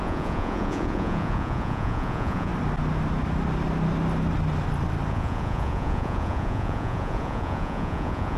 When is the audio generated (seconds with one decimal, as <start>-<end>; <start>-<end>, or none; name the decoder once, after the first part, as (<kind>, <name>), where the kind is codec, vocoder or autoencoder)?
0.0-2.5 (vocoder, Vocos); 5.1-8.4

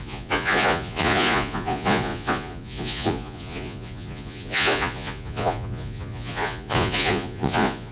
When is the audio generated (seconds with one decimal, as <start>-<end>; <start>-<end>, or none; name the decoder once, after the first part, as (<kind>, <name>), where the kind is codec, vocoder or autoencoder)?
0.0-7.9 (vocoder, Vocos)

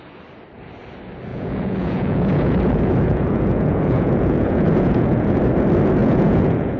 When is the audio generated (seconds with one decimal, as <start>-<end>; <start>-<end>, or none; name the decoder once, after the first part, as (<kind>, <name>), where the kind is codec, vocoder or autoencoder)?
1.3-5.4 (vocoder, Vocos); 6.0-6.8

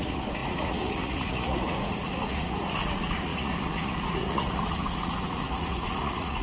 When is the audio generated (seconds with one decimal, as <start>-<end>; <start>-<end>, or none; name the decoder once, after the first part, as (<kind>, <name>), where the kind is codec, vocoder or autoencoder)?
0.0-6.4 (vocoder, Vocos)

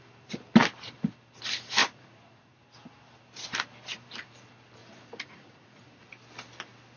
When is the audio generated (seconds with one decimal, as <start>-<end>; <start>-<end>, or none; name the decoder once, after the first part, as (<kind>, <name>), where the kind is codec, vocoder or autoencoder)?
1.8-2.6 (vocoder, Vocos); 4.8-6.0

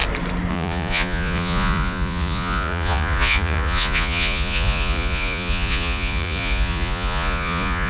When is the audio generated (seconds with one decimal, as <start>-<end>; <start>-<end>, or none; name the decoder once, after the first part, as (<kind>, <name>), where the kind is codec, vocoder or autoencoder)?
0.5-7.9 (vocoder, Vocos)